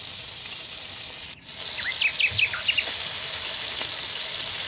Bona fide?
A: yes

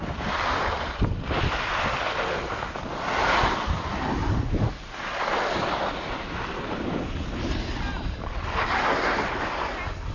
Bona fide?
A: yes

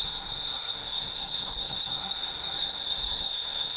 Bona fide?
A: no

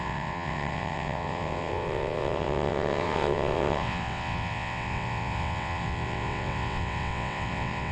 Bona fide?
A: no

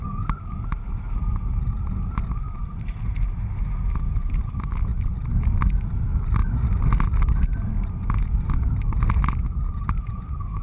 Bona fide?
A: yes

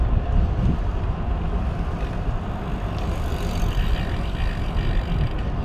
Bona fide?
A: yes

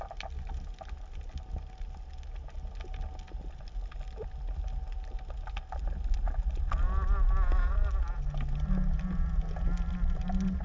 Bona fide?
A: yes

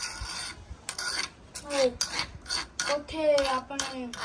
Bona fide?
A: yes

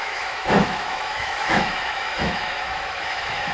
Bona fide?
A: no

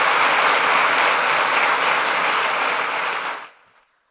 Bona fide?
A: yes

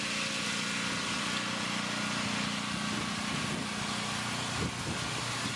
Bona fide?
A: yes